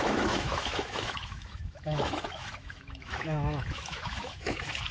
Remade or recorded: remade